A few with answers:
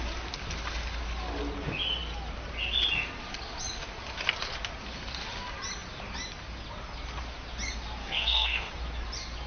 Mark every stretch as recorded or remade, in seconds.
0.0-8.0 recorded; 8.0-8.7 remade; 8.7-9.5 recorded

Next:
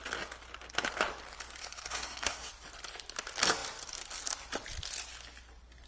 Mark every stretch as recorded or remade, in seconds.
0.0-1.6 recorded; 1.6-2.5 remade; 2.5-5.9 recorded

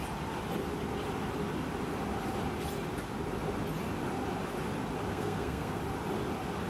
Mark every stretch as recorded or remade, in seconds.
0.0-5.1 recorded; 5.1-5.8 remade; 5.8-6.7 recorded